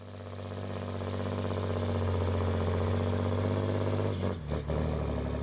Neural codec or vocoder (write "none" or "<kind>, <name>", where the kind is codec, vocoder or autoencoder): none